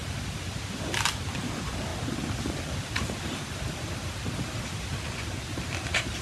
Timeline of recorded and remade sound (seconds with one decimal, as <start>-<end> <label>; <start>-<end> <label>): 0.0-6.2 recorded